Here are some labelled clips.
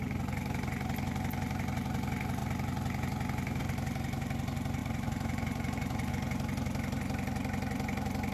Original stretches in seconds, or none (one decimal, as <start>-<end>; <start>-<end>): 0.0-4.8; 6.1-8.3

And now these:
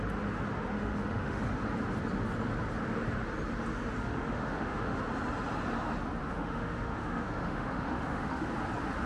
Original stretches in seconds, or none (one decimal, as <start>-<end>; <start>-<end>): 0.0-0.7; 1.4-4.0; 5.0-6.2; 8.5-9.1

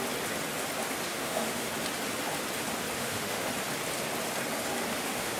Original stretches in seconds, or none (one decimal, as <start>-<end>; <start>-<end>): 0.0-1.1; 1.7-3.0; 3.5-4.9

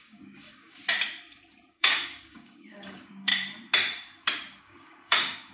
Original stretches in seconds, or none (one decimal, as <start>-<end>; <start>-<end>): 0.8-1.7; 3.3-4.6

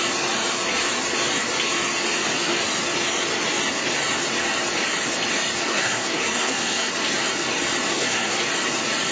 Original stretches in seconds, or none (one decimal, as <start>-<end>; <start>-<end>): 0.0-5.7; 6.9-7.9; 8.4-9.1